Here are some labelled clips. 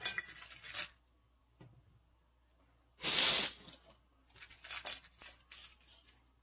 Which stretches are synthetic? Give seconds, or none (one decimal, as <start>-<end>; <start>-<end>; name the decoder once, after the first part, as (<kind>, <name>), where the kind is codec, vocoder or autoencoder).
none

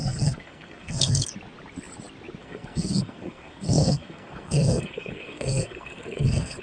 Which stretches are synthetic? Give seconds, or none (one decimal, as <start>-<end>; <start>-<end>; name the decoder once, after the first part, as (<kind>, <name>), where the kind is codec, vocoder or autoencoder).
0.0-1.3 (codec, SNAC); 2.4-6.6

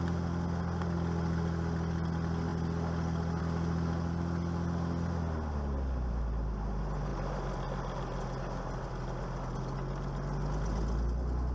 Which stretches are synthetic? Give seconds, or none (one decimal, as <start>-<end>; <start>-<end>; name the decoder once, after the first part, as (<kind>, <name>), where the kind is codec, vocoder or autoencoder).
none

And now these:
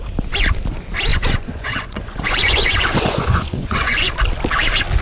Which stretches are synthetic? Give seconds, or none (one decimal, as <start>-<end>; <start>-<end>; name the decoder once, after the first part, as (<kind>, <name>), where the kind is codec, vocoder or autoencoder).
1.1-4.1 (vocoder, Vocos)

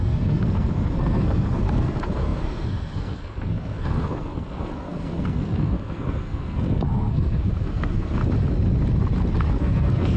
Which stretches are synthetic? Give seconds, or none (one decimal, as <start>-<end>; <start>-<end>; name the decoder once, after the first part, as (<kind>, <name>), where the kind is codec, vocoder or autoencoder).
0.0-8.2 (codec, SNAC); 9.5-10.2

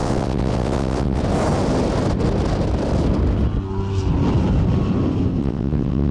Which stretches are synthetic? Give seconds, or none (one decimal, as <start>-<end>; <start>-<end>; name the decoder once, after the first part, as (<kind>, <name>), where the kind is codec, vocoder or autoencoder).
0.0-1.2 (vocoder, WaveNeXt); 5.4-6.1

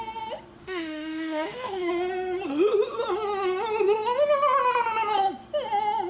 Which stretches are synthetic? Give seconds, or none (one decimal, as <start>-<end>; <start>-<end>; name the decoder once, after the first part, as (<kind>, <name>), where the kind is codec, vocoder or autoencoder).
0.6-1.9 (autoencoder, DAC-VAE)

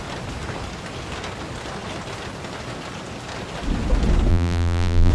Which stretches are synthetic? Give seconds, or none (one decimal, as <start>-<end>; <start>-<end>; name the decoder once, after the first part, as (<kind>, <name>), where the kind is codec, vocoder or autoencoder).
4.3-5.1 (vocoder, BigVGAN v2)